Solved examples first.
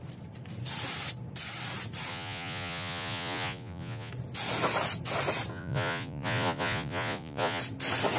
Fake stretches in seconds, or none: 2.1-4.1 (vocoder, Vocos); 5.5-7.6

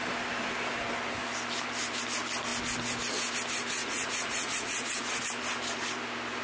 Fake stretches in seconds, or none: 3.8-5.2 (vocoder, Vocos)

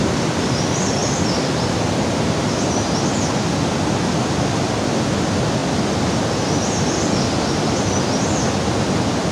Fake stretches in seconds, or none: none

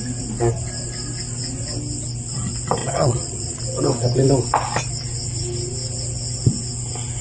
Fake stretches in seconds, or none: 2.8-3.6 (vocoder, Vocos)

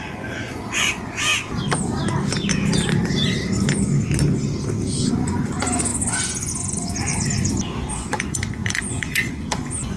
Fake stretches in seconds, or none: 0.0-1.3 (vocoder, Vocos); 5.1-7.1; 7.9-10.0

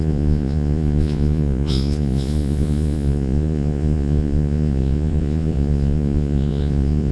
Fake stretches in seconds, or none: 0.0-7.1 (vocoder, Vocos)

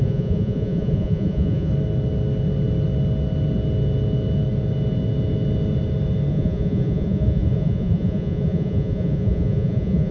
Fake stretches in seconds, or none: 0.0-1.7 (vocoder, Vocos); 6.3-10.1